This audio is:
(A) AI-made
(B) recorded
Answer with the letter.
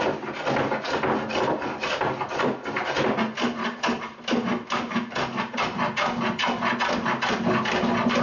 B